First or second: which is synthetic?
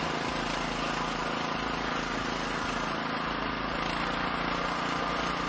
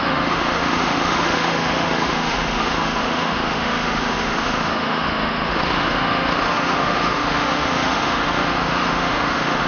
second